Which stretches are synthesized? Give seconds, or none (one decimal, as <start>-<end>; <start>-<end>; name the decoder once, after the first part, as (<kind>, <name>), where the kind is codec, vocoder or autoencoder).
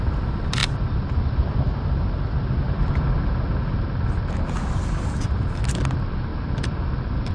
none